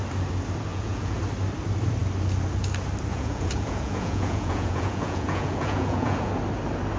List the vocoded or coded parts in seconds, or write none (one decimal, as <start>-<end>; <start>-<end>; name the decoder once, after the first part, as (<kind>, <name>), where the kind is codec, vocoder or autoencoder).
0.7-1.2 (vocoder, Vocos); 3.1-6.3